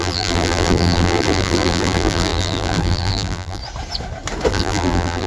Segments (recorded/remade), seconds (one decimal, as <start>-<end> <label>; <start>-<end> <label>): 0.0-3.6 remade; 3.6-4.5 recorded; 4.5-5.3 remade